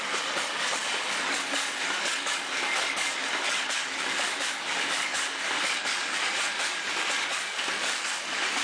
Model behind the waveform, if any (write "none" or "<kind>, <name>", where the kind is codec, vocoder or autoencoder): codec, DAC